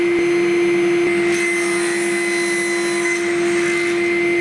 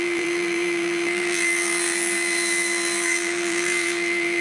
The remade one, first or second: second